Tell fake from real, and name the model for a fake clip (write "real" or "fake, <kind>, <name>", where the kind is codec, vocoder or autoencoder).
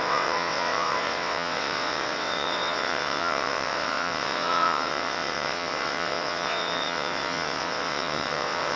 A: fake, vocoder, WaveNeXt